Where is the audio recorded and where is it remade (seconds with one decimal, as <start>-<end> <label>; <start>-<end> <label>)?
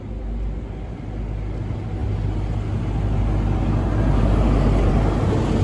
0.0-5.6 recorded